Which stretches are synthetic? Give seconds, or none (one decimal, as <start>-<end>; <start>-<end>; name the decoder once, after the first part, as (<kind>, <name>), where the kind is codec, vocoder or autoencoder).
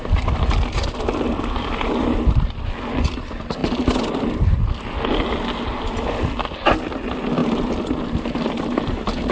none